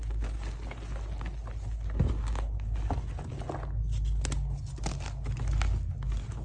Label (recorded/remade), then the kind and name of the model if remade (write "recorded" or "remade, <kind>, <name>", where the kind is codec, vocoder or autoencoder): recorded